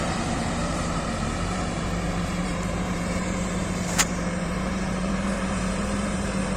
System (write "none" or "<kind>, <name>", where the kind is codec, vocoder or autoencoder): vocoder, BigVGAN v2